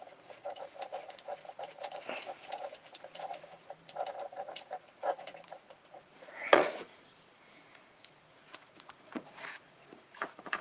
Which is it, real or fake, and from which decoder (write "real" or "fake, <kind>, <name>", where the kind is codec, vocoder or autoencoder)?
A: fake, vocoder, Vocos